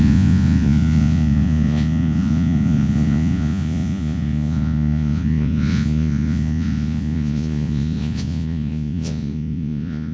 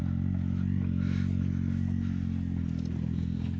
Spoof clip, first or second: first